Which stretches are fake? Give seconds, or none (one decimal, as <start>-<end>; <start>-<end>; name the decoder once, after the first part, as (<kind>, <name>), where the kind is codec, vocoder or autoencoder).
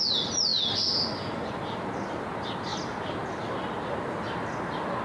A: none